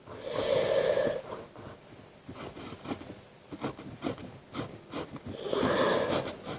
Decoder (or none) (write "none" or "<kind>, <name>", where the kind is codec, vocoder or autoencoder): none